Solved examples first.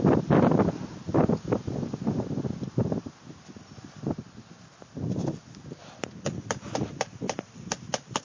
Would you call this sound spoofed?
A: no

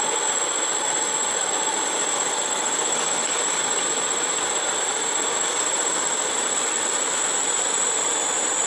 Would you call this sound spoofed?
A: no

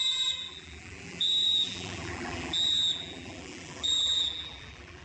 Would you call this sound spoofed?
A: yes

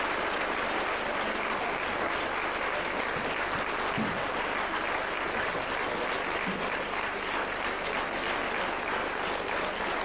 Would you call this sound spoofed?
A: no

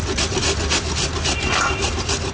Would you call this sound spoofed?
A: no